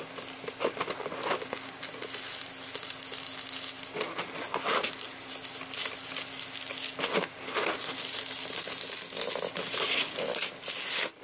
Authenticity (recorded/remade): recorded